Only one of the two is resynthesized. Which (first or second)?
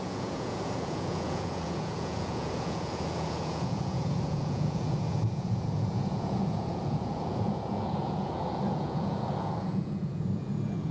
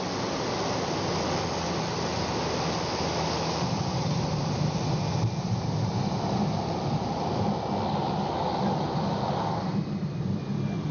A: first